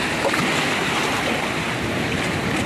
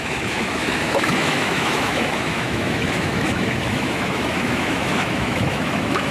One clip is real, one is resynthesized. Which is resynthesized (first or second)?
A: second